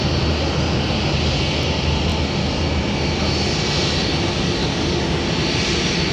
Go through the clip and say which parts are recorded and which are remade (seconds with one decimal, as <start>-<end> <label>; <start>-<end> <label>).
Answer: 0.0-4.6 recorded; 4.6-5.2 remade; 5.2-6.1 recorded